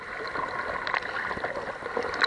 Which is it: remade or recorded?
recorded